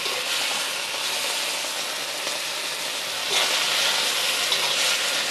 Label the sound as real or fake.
real